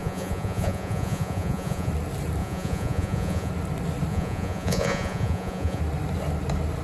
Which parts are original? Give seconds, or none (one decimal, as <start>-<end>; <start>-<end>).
1.9-2.4; 3.5-4.1; 5.8-6.8